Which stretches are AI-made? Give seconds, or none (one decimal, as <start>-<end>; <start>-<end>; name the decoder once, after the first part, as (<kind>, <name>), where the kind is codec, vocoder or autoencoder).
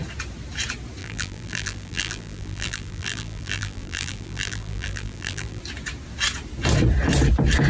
1.0-5.6 (vocoder, BigVGAN v2)